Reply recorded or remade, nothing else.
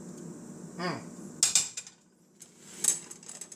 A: recorded